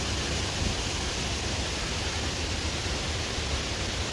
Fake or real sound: real